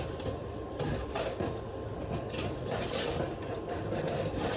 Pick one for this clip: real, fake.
real